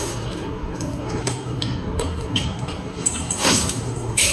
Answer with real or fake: fake